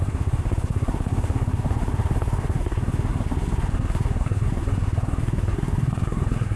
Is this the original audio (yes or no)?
no